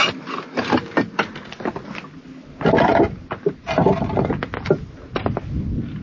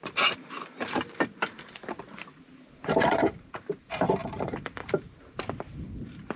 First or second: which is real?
first